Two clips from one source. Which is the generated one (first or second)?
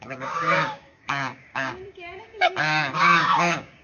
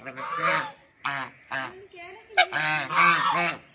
first